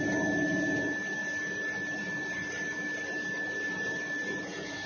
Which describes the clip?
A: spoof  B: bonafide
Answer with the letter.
B